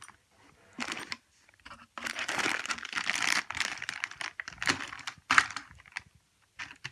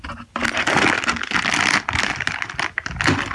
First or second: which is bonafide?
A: second